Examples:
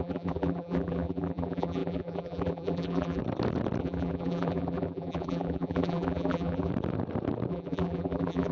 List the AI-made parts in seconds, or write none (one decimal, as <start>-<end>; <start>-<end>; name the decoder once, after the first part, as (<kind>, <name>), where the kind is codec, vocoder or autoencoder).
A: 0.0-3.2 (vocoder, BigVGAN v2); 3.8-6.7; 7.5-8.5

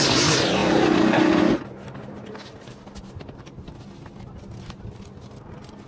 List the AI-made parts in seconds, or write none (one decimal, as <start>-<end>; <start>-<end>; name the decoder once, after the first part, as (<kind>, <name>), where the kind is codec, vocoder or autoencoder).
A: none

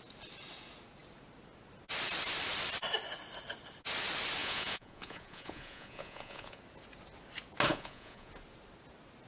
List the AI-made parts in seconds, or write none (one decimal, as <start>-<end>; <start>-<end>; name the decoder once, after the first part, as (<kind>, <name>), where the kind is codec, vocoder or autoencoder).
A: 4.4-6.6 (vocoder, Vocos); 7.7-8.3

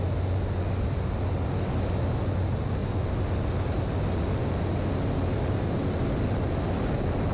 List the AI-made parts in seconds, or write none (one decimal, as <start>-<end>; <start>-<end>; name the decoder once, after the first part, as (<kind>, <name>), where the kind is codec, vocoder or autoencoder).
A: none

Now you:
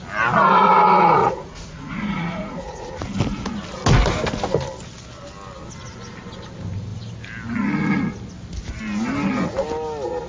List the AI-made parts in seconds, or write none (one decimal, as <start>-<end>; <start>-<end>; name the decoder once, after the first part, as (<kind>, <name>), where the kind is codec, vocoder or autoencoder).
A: 1.2-2.9 (vocoder, Vocos)

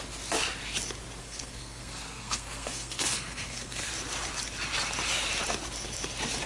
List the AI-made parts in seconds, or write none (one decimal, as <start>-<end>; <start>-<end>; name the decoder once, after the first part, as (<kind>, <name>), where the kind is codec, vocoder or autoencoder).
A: 1.2-3.9 (codec, SNAC)

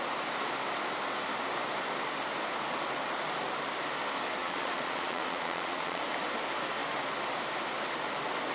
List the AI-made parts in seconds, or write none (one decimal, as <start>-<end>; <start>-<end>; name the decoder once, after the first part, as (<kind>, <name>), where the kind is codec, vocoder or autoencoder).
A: 4.4-6.0 (vocoder, Vocos)

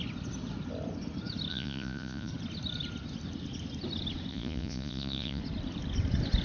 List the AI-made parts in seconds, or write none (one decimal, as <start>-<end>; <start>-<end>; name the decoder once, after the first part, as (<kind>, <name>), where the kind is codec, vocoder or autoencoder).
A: 1.5-2.3 (vocoder, Vocos); 4.3-5.4